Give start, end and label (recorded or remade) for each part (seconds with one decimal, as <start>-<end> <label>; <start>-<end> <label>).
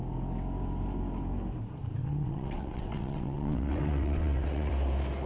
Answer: 0.0-2.0 recorded; 2.0-4.7 remade; 4.7-5.3 recorded